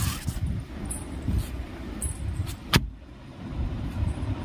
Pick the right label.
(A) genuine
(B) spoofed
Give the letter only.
B